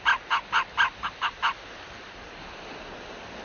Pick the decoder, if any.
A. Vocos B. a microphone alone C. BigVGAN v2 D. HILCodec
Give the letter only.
B